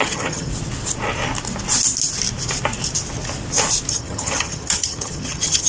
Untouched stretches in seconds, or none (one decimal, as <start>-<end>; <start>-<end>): 0.5-3.9